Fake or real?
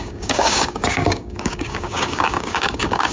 fake